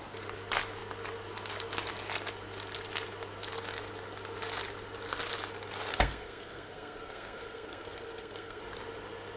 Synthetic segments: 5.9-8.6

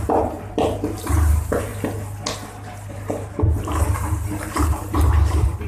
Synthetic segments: 0.0-1.7; 5.1-5.7